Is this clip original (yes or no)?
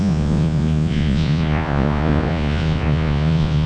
no